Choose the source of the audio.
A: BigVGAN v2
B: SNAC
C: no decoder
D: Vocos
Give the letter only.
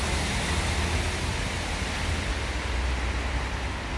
C